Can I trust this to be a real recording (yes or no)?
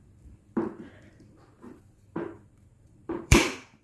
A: no